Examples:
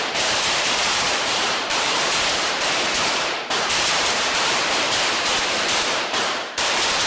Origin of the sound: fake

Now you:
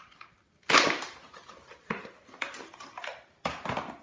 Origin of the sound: real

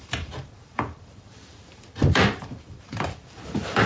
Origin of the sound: fake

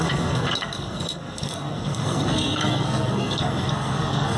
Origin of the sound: fake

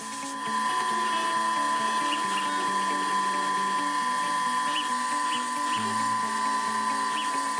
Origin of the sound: real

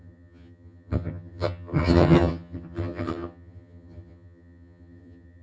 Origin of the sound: fake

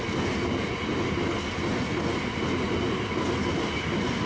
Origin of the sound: real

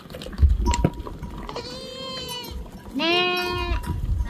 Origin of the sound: real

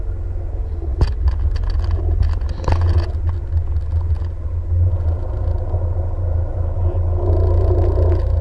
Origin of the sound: real